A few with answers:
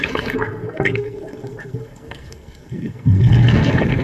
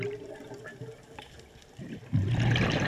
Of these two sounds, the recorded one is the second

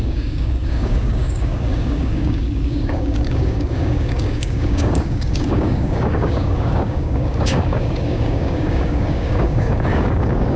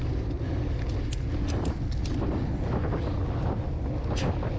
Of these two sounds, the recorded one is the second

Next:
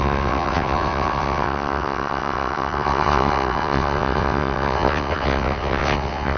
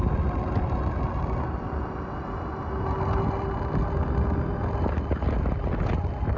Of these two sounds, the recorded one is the second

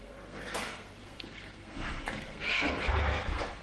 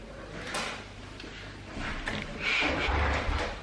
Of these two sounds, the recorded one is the second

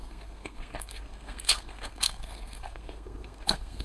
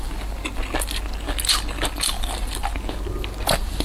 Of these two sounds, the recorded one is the second